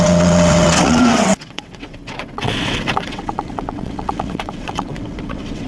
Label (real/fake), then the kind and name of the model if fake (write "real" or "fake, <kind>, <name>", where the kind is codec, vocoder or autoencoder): fake, vocoder, WaveNeXt